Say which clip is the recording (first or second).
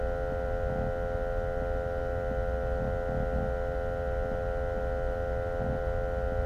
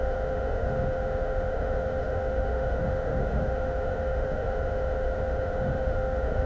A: first